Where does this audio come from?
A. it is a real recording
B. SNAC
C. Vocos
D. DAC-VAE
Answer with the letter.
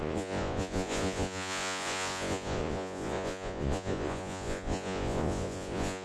C